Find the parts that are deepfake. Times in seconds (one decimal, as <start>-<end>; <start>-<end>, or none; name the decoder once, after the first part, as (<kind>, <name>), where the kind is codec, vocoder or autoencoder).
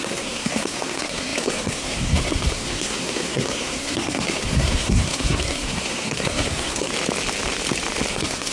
0.0-6.9 (codec, SNAC); 8.1-8.5